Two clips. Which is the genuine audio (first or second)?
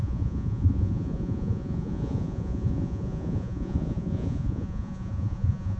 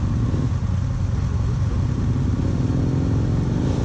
second